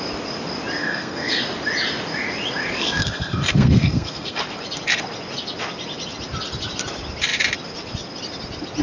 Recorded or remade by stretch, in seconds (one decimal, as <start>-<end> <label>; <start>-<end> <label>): 0.0-0.8 recorded; 0.8-1.4 remade; 1.4-2.8 recorded; 2.8-4.4 remade; 4.4-8.8 recorded